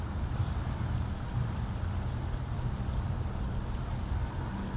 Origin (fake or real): real